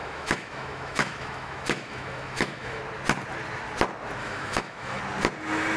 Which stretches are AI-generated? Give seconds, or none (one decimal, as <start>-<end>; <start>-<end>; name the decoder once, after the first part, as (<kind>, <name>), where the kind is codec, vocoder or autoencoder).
0.0-2.8 (autoencoder, DAC-VAE); 4.2-5.0